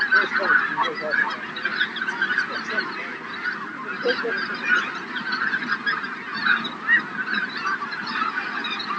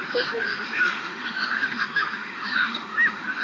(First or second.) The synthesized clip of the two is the second